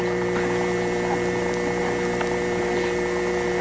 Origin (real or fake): real